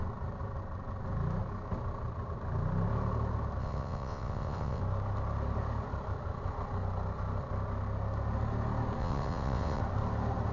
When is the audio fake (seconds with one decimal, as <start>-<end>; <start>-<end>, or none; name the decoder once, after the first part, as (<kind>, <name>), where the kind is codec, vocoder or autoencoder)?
3.6-4.8 (vocoder, WaveNeXt); 9.0-9.8